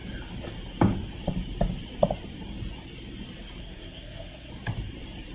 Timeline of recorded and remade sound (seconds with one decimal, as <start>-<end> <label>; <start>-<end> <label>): 0.0-3.6 recorded; 3.6-4.5 remade; 4.5-5.3 recorded